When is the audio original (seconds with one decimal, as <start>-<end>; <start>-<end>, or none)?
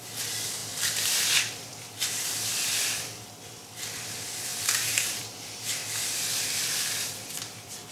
5.8-6.4